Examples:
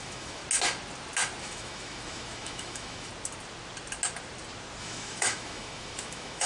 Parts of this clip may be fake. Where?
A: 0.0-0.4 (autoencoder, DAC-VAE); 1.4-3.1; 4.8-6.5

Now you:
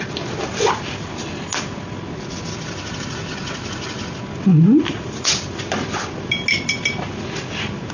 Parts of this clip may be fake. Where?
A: none

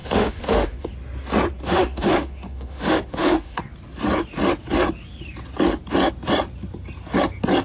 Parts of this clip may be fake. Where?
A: 0.0-0.9 (autoencoder, DAC-VAE); 1.6-3.6

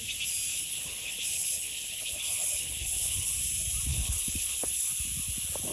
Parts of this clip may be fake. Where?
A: 0.5-3.3 (codec, HILCodec); 3.9-4.9